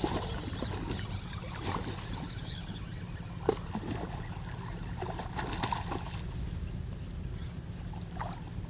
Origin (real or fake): real